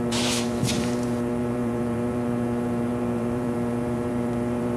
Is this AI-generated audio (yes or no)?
yes